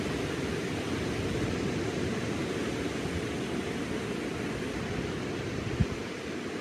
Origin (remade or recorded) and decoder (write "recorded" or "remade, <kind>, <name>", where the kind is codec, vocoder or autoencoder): recorded